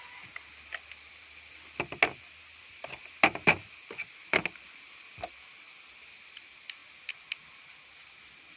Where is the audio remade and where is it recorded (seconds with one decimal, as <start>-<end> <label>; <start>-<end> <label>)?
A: 0.0-8.6 recorded